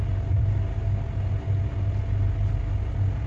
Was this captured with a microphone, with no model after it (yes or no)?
yes